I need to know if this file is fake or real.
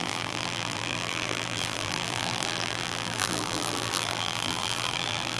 fake